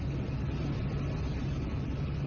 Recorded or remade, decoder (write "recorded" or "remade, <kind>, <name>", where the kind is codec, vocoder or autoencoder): recorded